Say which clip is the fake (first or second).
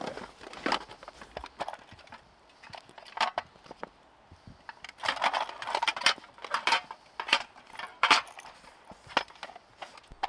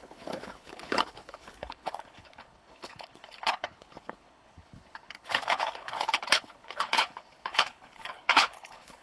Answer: second